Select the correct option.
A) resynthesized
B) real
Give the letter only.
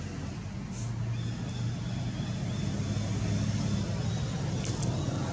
B